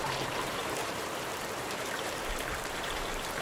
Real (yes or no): no